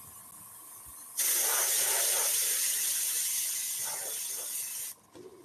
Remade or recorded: recorded